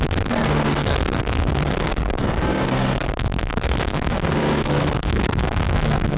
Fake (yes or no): yes